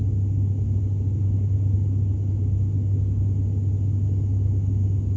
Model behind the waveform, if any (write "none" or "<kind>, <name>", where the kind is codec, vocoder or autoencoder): none